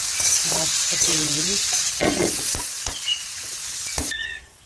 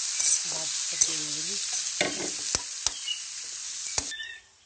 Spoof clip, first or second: first